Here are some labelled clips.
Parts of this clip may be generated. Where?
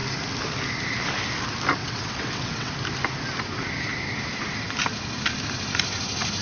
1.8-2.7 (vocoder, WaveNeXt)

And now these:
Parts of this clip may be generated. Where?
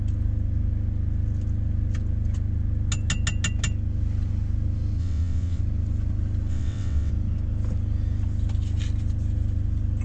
5.0-5.6 (vocoder, WaveNeXt); 6.5-7.1